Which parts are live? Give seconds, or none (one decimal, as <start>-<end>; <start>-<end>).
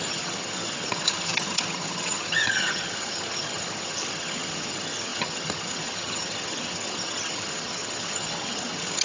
none